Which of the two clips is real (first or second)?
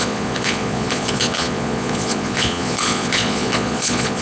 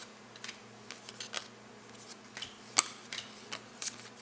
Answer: second